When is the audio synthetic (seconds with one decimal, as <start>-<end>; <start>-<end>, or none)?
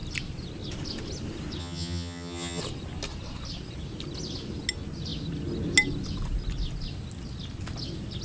1.6-2.6